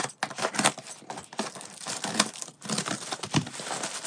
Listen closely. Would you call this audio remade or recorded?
recorded